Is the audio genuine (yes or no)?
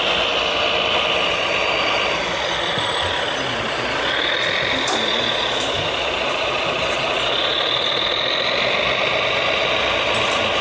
yes